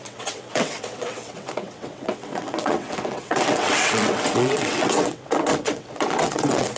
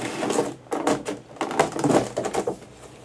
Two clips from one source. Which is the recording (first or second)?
second